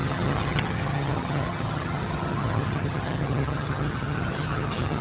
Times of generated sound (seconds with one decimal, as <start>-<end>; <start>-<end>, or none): 0.0-5.0